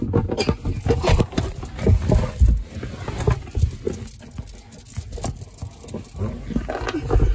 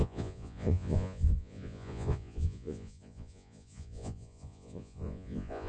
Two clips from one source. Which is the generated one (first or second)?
second